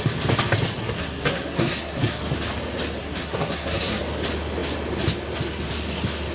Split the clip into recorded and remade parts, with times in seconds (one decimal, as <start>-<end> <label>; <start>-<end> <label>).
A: 0.0-0.8 recorded; 0.8-2.2 remade; 2.2-3.0 recorded; 3.0-4.0 remade; 4.0-6.3 recorded